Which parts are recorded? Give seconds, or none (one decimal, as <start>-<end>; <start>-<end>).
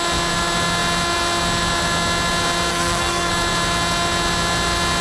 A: 0.0-2.7; 3.3-5.0